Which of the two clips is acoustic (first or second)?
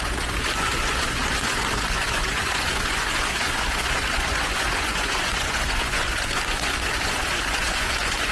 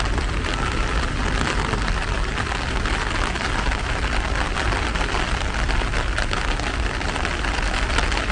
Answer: second